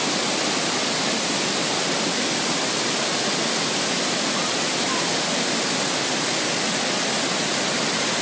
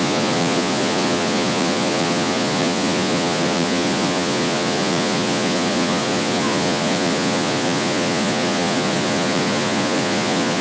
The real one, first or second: first